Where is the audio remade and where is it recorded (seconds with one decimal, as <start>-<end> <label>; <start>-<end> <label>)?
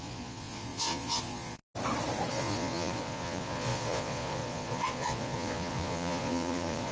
0.0-1.6 remade; 1.6-2.3 recorded; 2.3-6.9 remade